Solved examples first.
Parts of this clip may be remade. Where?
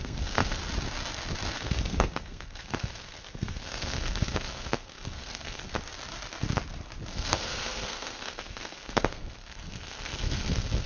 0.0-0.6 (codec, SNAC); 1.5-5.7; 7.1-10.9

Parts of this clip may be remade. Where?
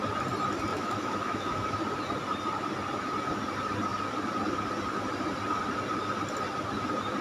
0.7-1.7 (autoencoder, DAC-VAE)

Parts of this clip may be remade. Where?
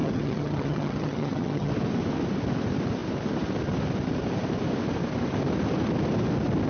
0.0-1.7 (vocoder, HiFi-GAN)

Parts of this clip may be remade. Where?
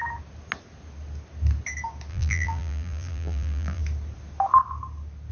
2.1-3.8 (vocoder, BigVGAN v2)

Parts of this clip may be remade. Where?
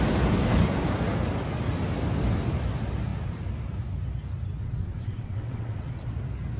4.6-5.9 (vocoder, WaveNeXt)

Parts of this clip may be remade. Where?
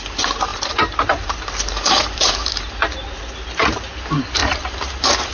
0.5-2.7 (vocoder, BigVGAN v2); 4.4-5.3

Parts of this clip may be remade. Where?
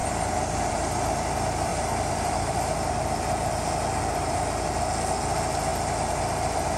0.0-1.1 (vocoder, BigVGAN v2); 1.7-2.9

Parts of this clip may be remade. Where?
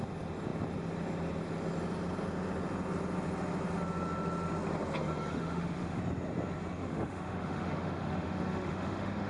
5.3-6.0 (autoencoder, DAC-VAE); 6.8-9.3